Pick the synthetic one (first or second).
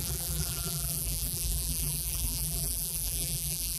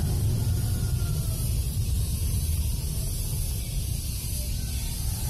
first